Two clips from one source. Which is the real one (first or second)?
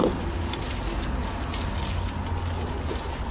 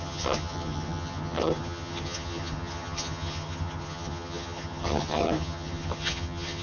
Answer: first